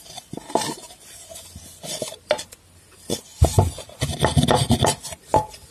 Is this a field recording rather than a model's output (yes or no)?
yes